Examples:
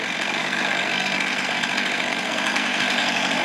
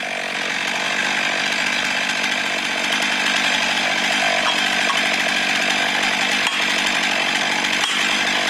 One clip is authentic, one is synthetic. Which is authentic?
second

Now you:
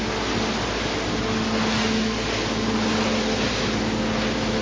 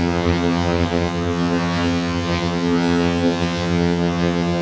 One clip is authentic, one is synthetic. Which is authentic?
first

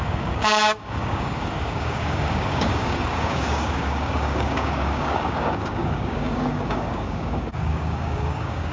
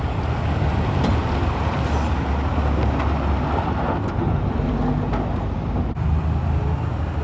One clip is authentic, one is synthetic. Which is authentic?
second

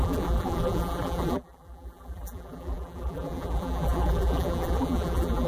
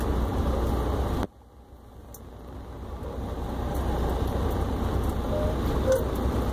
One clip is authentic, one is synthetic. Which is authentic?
second